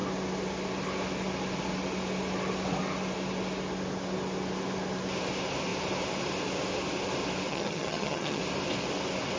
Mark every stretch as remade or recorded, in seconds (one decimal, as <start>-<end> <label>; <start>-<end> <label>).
0.0-7.5 recorded; 7.5-8.4 remade; 8.4-9.4 recorded